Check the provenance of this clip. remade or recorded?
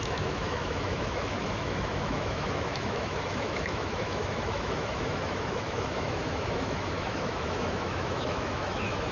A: remade